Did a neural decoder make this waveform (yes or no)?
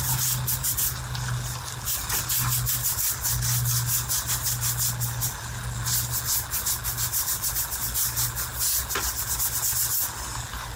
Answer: no